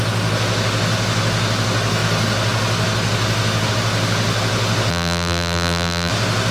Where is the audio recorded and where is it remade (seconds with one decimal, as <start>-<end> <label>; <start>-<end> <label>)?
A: 0.0-4.9 recorded; 4.9-6.1 remade; 6.1-6.5 recorded